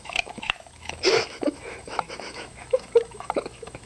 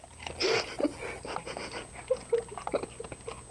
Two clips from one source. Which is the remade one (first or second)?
first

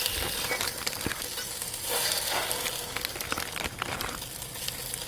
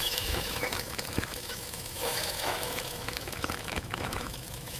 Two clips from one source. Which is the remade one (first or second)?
second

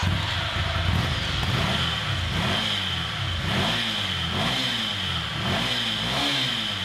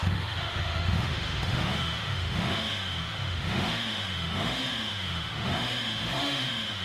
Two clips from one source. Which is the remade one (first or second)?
second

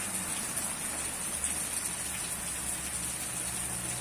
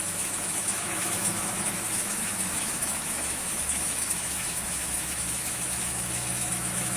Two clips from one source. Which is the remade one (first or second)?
second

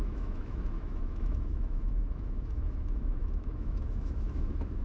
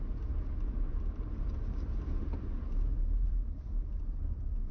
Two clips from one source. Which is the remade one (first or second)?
first